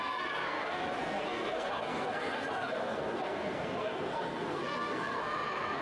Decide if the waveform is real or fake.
fake